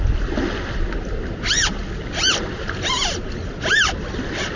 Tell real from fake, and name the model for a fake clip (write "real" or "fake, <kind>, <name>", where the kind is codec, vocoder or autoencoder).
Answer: real